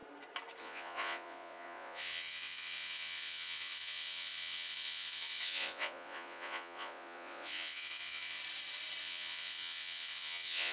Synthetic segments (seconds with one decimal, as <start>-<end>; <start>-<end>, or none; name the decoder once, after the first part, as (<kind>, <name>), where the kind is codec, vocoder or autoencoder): 0.6-8.4 (vocoder, Vocos); 9.0-10.7